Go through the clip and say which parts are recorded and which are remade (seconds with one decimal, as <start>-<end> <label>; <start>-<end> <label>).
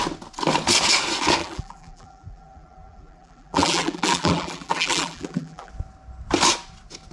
0.0-1.4 recorded; 1.4-5.7 remade; 5.7-7.1 recorded